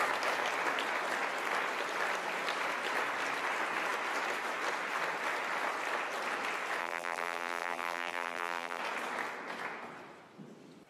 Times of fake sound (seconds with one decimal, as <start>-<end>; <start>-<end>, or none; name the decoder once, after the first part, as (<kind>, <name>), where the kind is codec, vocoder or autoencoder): 6.8-8.8 (vocoder, BigVGAN v2)